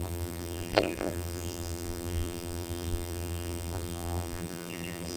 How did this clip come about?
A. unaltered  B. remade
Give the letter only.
B